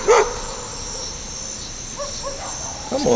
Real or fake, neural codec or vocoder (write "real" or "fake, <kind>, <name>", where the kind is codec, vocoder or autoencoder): real